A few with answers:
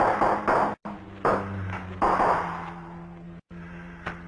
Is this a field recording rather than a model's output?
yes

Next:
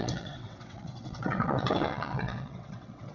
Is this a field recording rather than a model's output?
no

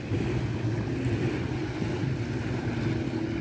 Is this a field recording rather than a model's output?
yes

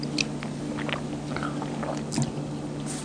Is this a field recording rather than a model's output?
yes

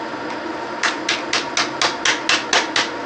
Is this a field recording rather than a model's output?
yes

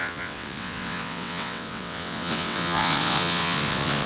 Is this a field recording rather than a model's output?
no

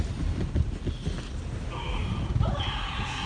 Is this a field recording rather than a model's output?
yes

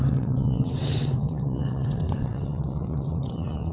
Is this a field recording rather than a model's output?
no